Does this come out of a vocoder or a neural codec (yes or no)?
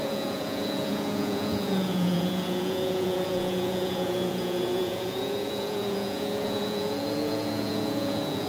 yes